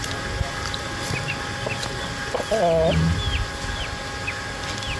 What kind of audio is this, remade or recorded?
recorded